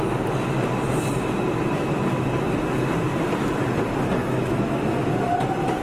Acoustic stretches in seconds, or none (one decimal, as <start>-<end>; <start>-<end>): 0.0-4.2; 5.1-5.8